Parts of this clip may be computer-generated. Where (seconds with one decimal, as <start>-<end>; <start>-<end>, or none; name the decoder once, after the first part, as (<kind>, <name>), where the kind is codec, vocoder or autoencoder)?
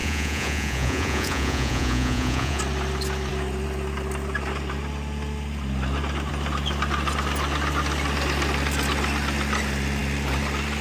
0.0-2.6 (vocoder, Vocos)